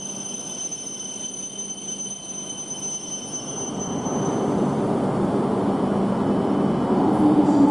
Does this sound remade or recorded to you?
recorded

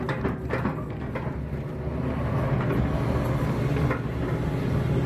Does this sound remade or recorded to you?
recorded